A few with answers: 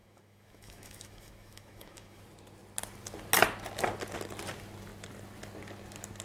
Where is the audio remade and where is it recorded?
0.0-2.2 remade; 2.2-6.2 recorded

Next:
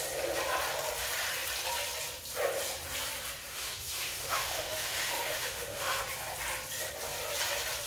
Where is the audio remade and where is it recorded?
0.0-3.5 recorded; 3.5-6.0 remade; 6.0-7.9 recorded

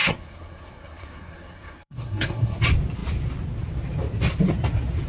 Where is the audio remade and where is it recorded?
0.0-2.6 remade; 2.6-5.1 recorded

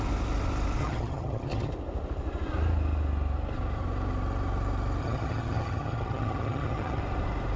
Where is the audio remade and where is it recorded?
0.0-0.8 recorded; 0.8-1.7 remade; 1.7-5.0 recorded; 5.0-7.0 remade; 7.0-7.6 recorded

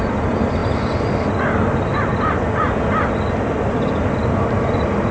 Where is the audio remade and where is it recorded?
0.0-5.1 recorded

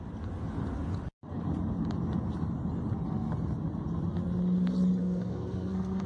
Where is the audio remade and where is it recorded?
0.0-5.0 recorded; 5.0-6.1 remade